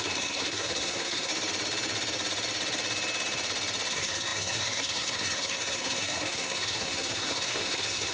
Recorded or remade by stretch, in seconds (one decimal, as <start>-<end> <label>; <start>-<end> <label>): 0.0-1.3 remade; 1.3-3.9 recorded; 3.9-8.1 remade